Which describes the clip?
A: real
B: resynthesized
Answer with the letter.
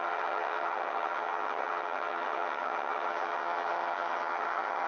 B